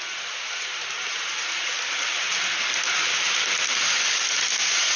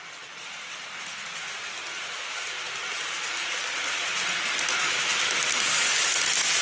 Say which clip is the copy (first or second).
first